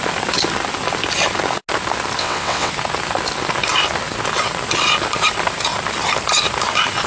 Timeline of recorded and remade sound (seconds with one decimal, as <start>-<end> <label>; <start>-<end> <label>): 0.0-2.2 recorded; 2.2-2.7 remade; 2.7-7.1 recorded